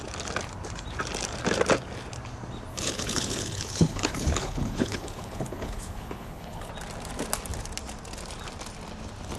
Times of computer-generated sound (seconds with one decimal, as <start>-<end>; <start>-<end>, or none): 2.7-6.7